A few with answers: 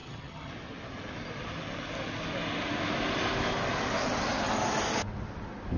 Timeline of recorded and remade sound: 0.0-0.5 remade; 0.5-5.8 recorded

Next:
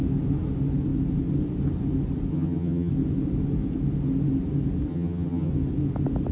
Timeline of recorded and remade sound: 0.0-2.3 recorded; 2.3-2.9 remade; 2.9-4.9 recorded; 4.9-5.5 remade; 5.5-6.3 recorded

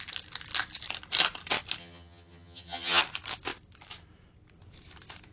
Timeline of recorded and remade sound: 0.0-1.8 recorded; 1.8-3.0 remade; 3.0-5.3 recorded